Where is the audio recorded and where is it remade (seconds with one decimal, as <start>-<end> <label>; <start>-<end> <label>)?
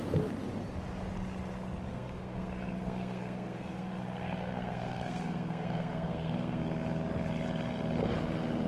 0.0-1.9 recorded; 1.9-6.6 remade; 6.6-8.7 recorded